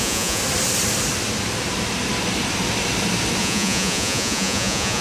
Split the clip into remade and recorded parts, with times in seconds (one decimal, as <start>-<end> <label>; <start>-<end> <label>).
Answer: 0.0-0.4 remade; 0.4-3.4 recorded; 3.4-5.0 remade